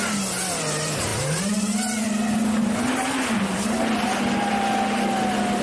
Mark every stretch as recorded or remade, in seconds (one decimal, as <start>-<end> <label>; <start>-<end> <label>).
0.0-5.6 recorded